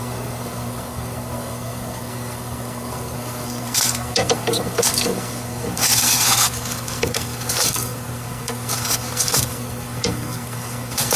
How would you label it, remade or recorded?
remade